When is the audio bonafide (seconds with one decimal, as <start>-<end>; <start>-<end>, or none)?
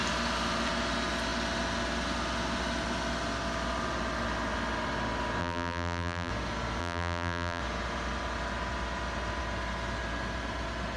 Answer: 0.0-5.4; 6.3-6.8; 7.6-11.0